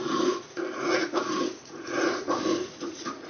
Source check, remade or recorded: remade